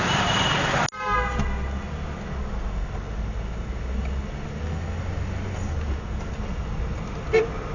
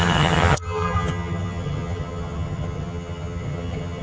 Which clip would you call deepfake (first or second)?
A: second